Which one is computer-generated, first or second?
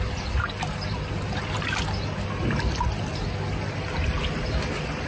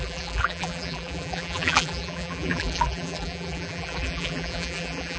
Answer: second